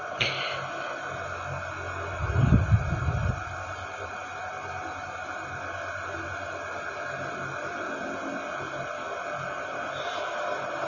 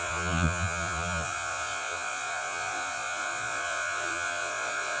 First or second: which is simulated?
second